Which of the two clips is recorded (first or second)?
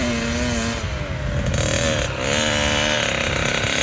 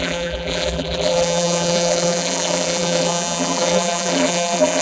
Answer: first